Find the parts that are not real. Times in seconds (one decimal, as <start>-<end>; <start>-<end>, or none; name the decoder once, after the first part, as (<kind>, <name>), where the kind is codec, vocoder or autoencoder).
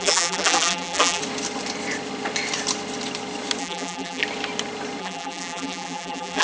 0.0-1.2 (vocoder, BigVGAN v2); 3.6-4.2; 5.0-6.4